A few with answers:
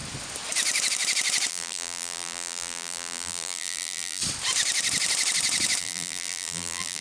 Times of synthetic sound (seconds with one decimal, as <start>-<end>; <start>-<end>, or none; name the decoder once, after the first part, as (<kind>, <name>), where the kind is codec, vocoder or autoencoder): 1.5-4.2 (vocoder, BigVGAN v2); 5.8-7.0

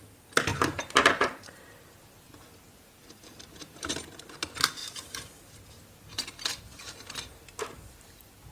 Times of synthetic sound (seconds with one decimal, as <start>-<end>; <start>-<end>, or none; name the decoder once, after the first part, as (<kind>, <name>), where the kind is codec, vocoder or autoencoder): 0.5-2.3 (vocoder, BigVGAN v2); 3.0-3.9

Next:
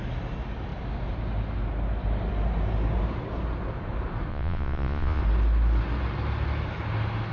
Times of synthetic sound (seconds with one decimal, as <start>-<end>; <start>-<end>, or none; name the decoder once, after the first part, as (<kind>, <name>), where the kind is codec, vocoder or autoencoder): 4.3-5.2 (vocoder, Vocos)

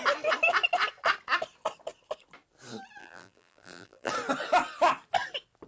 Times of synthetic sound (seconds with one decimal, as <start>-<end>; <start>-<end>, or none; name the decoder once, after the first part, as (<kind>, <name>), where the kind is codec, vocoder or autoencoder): 3.0-4.1 (vocoder, BigVGAN v2)

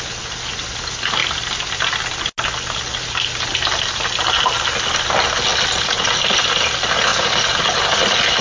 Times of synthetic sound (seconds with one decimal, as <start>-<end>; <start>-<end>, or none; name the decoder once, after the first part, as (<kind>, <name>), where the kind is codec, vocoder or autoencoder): none

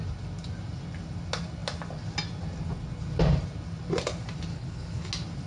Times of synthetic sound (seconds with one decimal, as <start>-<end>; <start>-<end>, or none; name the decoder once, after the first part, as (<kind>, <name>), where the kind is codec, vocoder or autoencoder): 4.5-5.1 (codec, HILCodec)

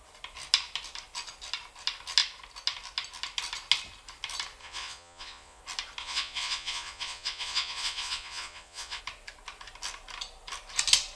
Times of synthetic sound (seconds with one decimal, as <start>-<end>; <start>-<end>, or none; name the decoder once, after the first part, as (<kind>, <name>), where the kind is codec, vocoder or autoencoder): 4.6-5.6 (vocoder, Vocos); 6.0-9.0